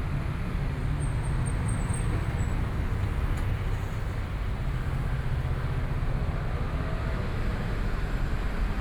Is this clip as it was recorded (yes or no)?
yes